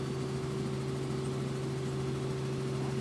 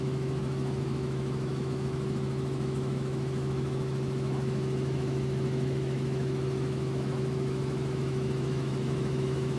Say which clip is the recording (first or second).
first